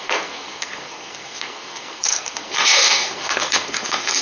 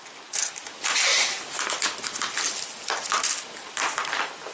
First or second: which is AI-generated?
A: first